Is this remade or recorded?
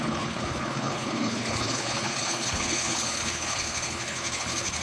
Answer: remade